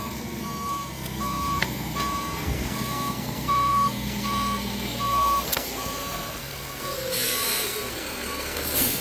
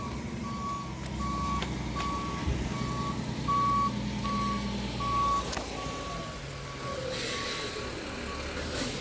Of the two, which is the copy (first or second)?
first